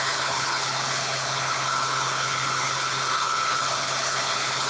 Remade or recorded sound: remade